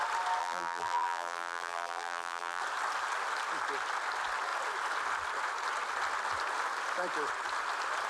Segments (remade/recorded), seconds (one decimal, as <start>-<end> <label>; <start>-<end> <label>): 0.0-0.4 recorded; 0.4-2.6 remade; 2.6-8.1 recorded